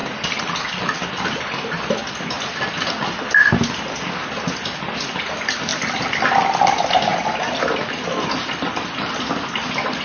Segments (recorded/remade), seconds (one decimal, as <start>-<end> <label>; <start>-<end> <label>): 0.0-10.0 recorded